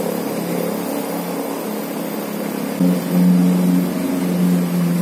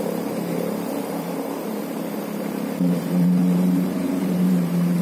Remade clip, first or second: second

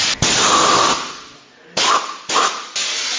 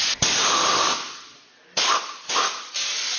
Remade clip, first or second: second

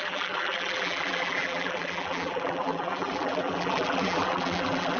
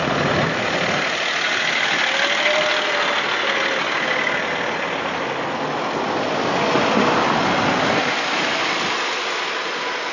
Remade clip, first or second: first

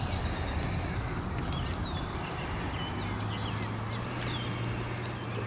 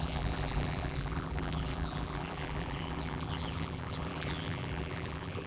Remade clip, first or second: second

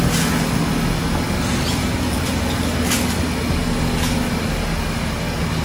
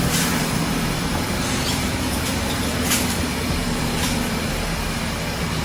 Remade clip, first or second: second